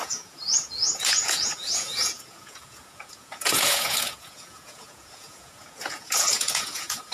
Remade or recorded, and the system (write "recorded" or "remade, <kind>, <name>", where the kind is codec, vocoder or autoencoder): remade, vocoder, Vocos